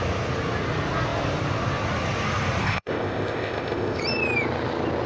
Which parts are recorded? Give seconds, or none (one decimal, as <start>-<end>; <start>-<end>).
0.0-2.6; 4.0-5.1